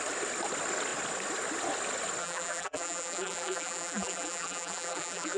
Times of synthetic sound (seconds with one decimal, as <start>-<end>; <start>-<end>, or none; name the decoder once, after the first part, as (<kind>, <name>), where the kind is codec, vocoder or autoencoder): 2.2-5.4 (vocoder, BigVGAN v2)